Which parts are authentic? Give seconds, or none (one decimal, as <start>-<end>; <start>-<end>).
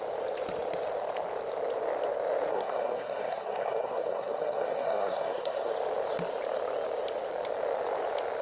0.0-2.5; 5.7-8.4